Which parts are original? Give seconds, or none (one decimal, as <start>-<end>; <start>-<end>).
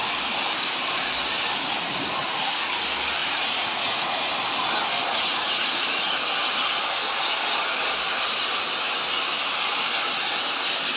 0.0-2.2; 2.7-3.2; 4.3-5.0; 6.1-11.0